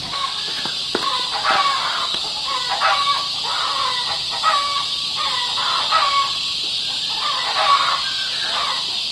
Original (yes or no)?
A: no